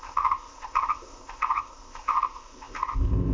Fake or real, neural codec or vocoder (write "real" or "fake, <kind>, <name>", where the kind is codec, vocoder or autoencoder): fake, codec, ZipCodec